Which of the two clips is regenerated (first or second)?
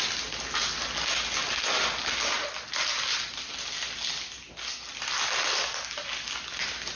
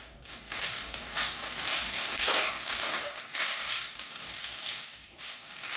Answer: second